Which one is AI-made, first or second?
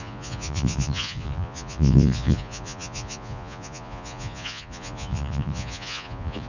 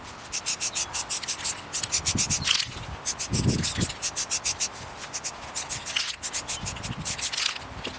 first